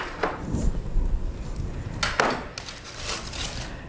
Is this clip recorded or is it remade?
recorded